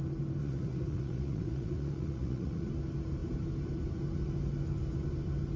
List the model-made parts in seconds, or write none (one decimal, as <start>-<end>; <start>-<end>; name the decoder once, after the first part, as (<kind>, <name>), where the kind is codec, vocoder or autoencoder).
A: 0.4-2.7 (vocoder, Vocos)